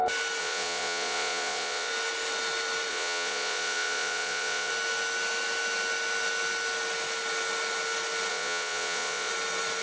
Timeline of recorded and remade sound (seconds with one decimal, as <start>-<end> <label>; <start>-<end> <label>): 0.0-0.4 recorded; 0.4-1.9 remade; 1.9-2.9 recorded; 2.9-4.7 remade; 4.7-8.3 recorded; 8.3-9.3 remade; 9.3-9.8 recorded